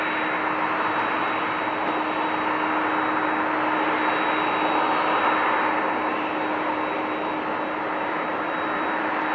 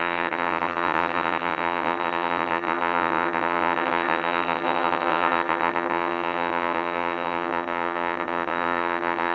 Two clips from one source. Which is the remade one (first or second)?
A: second